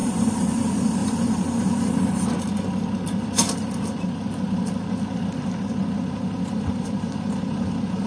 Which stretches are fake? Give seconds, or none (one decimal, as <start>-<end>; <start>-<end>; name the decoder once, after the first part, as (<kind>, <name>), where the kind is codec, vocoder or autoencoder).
0.0-0.5 (vocoder, BigVGAN v2)